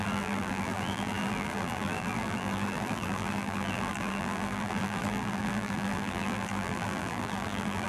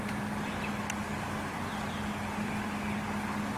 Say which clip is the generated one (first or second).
first